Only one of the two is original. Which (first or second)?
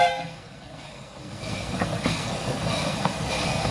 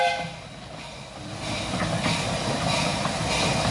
second